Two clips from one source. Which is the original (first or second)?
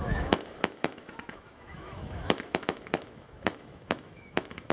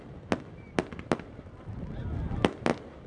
second